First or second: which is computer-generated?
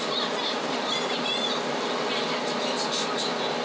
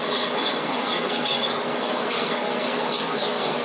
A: second